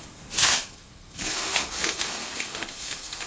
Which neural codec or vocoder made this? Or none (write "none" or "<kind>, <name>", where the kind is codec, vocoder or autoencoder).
codec, SNAC